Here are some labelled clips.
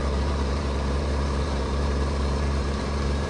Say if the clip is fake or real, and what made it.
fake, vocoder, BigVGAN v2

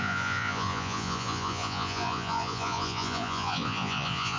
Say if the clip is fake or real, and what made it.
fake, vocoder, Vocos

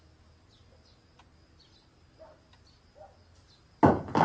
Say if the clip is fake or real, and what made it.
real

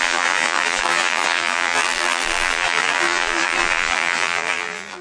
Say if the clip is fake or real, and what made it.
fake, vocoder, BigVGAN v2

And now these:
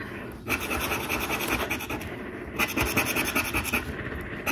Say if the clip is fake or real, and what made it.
real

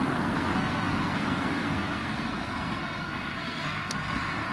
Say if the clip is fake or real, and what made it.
fake, codec, SNAC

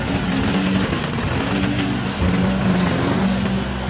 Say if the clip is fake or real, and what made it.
real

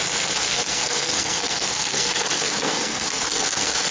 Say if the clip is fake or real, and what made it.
fake, codec, SNAC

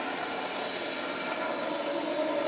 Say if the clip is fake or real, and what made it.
real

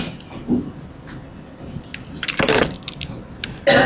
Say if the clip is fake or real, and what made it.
real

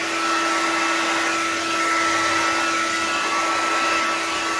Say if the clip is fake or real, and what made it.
real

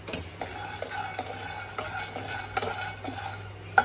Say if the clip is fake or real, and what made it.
real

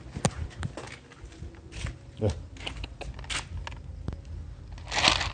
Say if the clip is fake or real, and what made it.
real